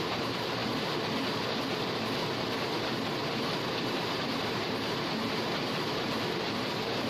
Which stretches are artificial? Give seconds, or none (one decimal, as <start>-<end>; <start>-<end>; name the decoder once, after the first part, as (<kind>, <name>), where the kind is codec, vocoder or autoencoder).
0.0-0.6 (vocoder, BigVGAN v2); 4.5-5.2; 6.4-7.1